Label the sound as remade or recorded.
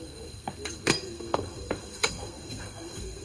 remade